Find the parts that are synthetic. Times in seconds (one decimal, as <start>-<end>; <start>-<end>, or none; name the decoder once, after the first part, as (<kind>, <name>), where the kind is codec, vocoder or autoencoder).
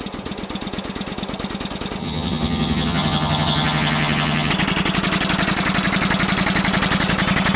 2.0-4.5 (vocoder, HiFi-GAN)